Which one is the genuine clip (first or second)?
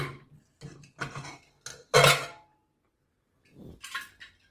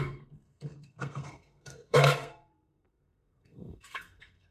first